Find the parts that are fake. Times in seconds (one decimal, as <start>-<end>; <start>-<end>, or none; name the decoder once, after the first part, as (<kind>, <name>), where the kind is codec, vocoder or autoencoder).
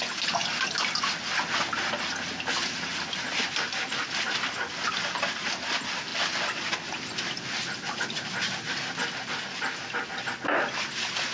none